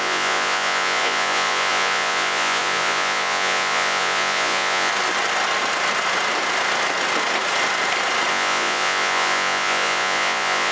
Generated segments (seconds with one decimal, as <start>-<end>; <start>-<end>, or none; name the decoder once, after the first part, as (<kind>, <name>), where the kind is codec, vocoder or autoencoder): 0.0-4.9 (vocoder, Vocos); 8.3-10.7